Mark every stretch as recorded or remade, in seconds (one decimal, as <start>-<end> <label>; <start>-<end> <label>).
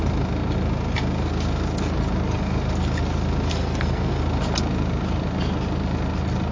0.0-3.5 recorded; 3.5-4.2 remade; 4.2-6.5 recorded